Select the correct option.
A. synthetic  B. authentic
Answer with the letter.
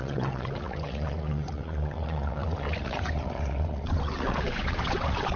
A